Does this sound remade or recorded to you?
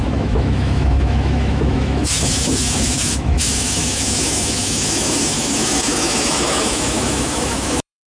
remade